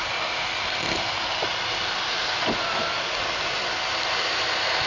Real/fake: real